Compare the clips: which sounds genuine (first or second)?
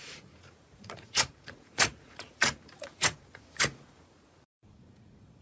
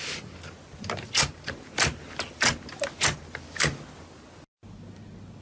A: second